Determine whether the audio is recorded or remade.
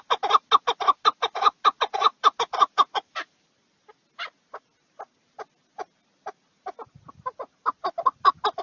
recorded